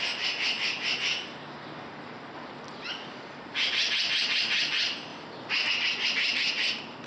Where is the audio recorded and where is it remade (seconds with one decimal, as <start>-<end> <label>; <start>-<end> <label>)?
0.0-7.1 recorded